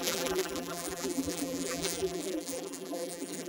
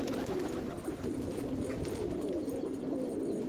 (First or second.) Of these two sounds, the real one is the second